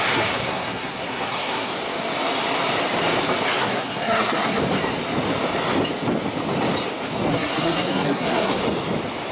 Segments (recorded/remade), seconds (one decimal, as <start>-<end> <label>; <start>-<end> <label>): 0.0-1.7 remade; 1.7-3.6 recorded; 3.6-4.6 remade; 4.6-7.3 recorded; 7.3-8.6 remade; 8.6-9.3 recorded